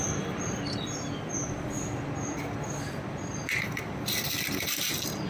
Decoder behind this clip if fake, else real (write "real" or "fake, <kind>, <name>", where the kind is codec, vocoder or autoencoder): real